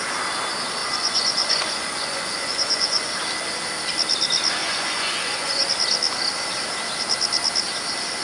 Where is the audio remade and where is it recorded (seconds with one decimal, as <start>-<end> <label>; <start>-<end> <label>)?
0.0-0.8 recorded; 0.8-3.1 remade; 3.1-4.6 recorded; 4.6-5.7 remade; 5.7-8.2 recorded